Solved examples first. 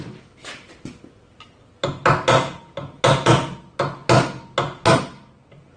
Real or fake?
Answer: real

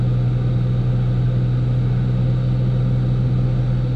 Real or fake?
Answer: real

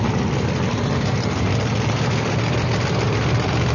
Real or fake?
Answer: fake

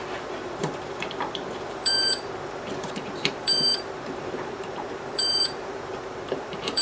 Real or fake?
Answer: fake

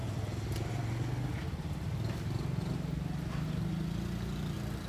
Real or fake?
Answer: real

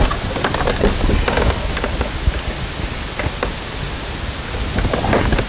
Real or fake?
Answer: real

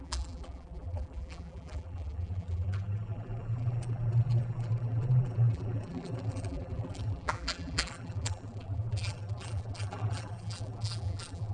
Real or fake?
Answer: fake